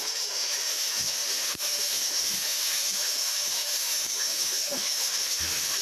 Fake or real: fake